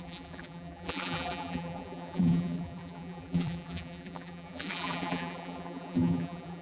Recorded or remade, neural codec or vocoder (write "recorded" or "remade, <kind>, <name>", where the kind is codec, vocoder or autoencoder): remade, vocoder, BigVGAN v2